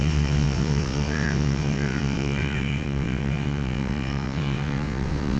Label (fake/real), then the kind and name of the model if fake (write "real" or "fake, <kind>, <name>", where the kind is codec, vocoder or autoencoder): fake, vocoder, WaveNeXt